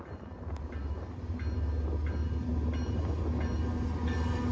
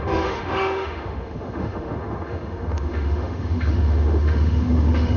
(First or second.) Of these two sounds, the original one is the first